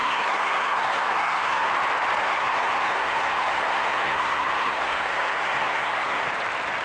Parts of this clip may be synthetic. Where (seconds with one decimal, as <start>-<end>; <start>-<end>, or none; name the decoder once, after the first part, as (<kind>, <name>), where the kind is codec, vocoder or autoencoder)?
0.0-1.7 (codec, SNAC); 2.2-6.3